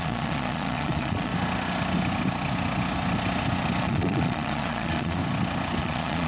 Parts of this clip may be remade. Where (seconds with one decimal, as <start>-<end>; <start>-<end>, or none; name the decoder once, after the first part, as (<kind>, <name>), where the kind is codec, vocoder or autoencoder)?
0.0-1.3 (vocoder, Vocos); 3.8-5.2; 5.8-6.3